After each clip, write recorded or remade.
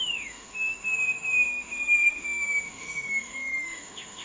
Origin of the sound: remade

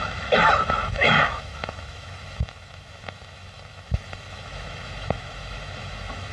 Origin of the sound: remade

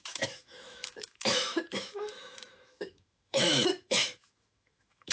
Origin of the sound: remade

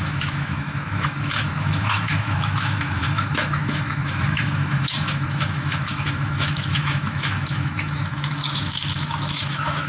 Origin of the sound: remade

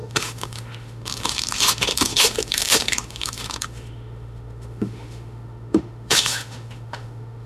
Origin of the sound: remade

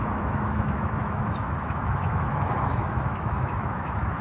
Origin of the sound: remade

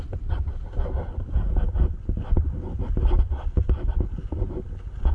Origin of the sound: recorded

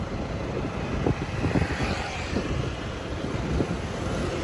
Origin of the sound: recorded